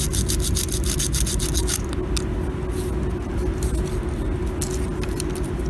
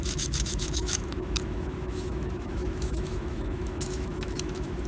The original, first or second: first